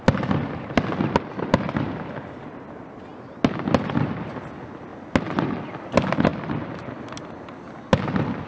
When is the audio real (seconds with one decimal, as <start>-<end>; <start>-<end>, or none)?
0.0-6.3; 7.0-8.5